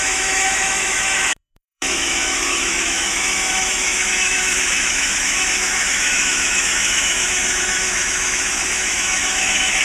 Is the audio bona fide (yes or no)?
no